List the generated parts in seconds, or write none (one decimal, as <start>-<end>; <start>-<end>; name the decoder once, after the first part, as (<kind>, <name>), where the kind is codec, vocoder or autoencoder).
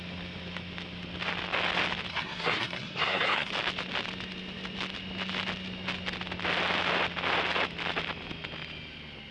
2.1-3.5 (codec, SNAC)